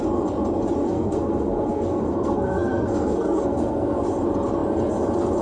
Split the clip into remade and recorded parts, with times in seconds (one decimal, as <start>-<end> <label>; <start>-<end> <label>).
0.0-0.8 recorded; 0.8-4.0 remade; 4.0-5.4 recorded